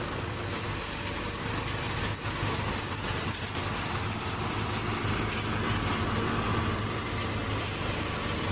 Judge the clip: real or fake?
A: real